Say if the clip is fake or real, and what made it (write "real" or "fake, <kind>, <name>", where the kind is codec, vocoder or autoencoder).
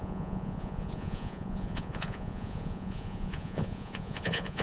fake, vocoder, Vocos